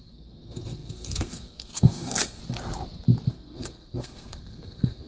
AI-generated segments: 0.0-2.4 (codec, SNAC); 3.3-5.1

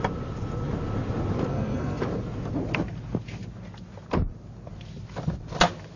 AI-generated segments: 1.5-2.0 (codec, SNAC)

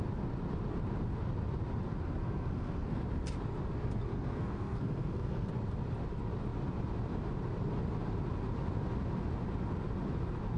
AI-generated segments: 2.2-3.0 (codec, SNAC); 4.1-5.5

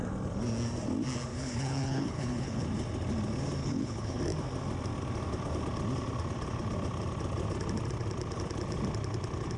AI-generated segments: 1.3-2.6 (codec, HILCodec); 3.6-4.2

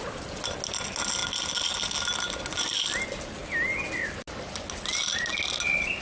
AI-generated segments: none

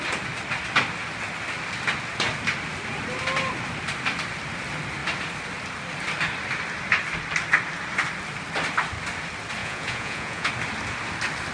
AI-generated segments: 9.6-10.5 (vocoder, Vocos)

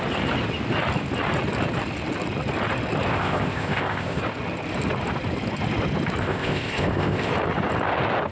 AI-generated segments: 3.1-4.2 (codec, ZipCodec); 6.2-7.3

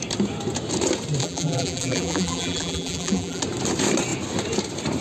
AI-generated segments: 1.2-3.4 (vocoder, BigVGAN v2)